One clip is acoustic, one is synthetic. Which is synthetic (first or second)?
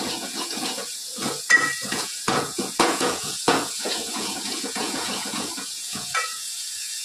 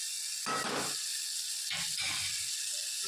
first